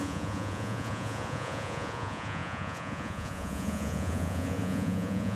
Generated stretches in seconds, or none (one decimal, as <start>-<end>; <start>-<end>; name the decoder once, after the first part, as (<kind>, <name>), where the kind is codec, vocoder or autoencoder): 0.0-5.4 (vocoder, Vocos)